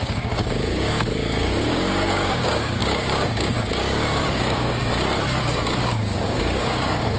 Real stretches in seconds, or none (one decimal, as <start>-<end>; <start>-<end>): 4.8-5.4